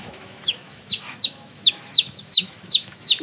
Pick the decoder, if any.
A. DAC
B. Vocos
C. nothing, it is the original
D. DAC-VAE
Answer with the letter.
D